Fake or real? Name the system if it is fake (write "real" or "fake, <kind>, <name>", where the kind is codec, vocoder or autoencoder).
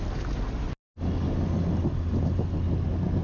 real